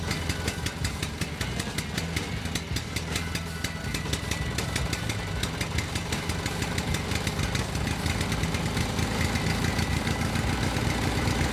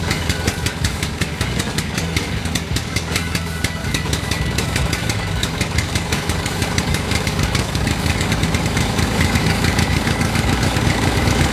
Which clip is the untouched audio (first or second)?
first